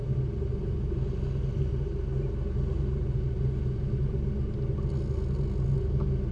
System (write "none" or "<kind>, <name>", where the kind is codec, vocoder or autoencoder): none